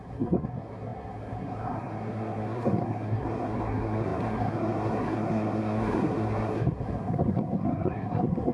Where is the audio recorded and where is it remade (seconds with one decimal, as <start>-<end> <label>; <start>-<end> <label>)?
0.0-8.5 remade